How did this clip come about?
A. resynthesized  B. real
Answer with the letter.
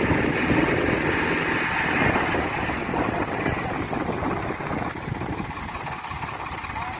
B